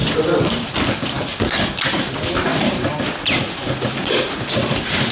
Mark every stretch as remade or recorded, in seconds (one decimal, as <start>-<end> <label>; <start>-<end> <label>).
0.0-1.3 remade; 1.3-1.9 recorded; 1.9-2.5 remade; 2.5-3.7 recorded; 3.7-5.1 remade